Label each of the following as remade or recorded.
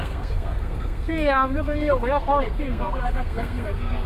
remade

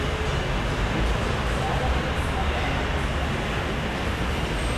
recorded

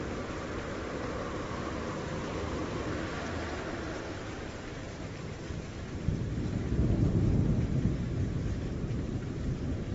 remade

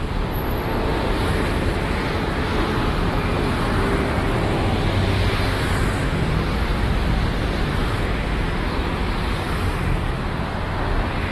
recorded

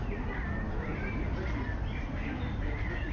recorded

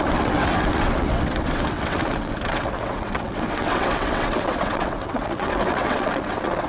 remade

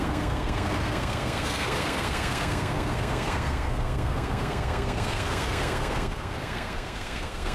remade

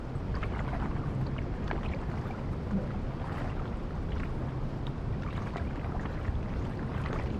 recorded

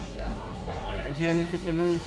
remade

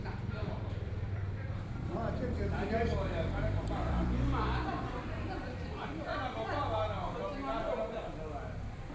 remade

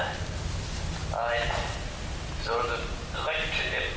recorded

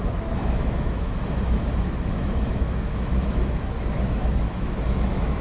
remade